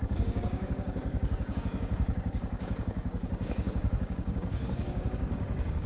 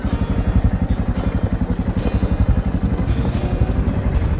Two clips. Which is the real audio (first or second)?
second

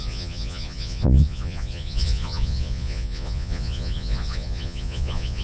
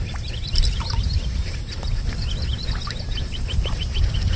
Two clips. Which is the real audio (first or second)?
second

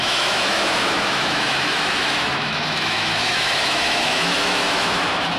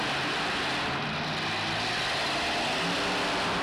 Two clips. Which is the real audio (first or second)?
second